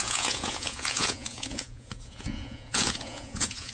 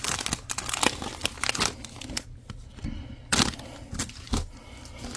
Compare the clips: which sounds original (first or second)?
second